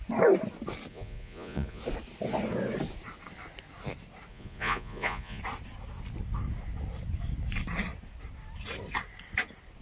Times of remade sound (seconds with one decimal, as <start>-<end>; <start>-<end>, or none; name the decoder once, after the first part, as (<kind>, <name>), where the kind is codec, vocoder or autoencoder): 0.9-1.8 (vocoder, Vocos); 4.3-5.4